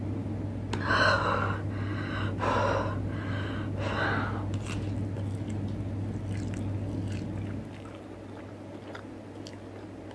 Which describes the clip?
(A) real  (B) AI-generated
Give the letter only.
A